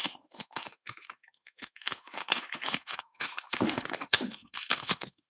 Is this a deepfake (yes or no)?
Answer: yes